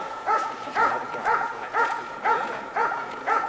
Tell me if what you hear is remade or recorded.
remade